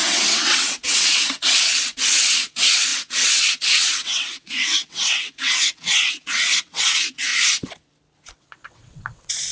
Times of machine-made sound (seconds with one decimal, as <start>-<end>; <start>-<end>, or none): 0.0-7.3; 8.3-9.5